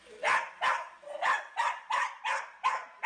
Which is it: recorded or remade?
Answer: recorded